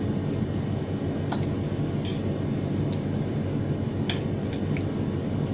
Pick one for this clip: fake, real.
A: real